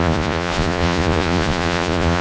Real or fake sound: fake